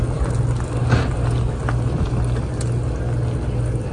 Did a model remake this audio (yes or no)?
no